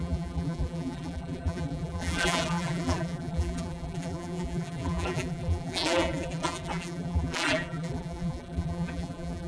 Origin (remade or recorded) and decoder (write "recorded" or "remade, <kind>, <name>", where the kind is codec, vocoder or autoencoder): remade, vocoder, BigVGAN v2